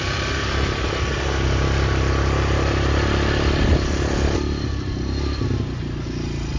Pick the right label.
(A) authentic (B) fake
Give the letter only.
A